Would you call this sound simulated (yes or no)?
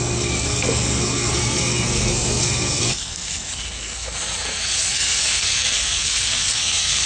yes